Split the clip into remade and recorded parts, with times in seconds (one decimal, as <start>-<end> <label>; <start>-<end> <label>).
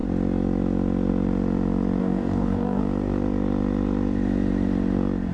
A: 0.0-2.0 recorded; 2.0-2.8 remade; 2.8-5.3 recorded